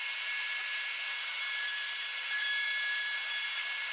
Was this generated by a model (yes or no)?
yes